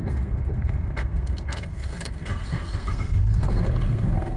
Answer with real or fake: fake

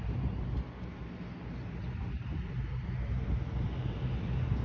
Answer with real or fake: real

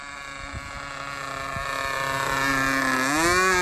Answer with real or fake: real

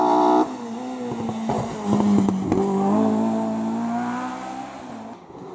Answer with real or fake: real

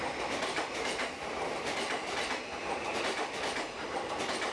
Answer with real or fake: real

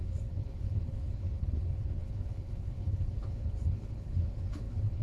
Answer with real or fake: fake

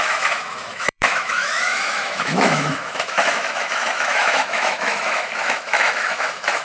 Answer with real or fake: fake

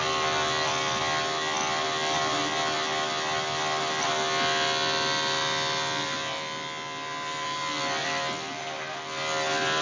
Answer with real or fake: real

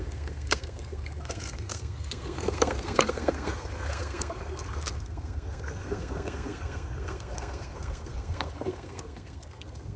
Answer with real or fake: fake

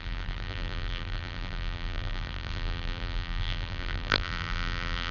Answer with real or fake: fake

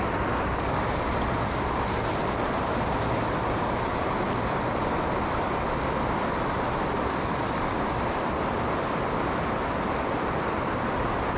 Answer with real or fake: real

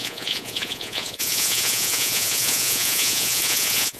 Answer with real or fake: fake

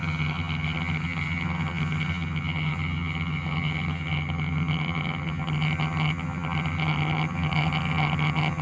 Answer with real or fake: fake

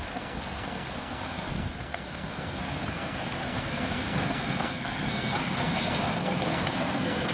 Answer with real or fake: fake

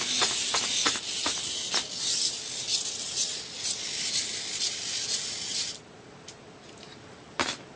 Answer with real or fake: real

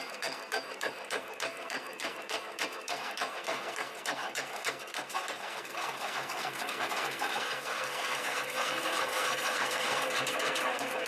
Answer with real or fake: fake